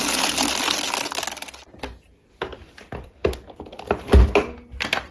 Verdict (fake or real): real